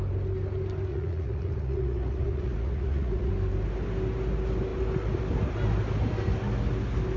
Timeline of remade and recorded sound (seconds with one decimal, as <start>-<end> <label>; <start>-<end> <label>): 0.0-0.9 recorded; 0.9-3.3 remade; 3.3-7.2 recorded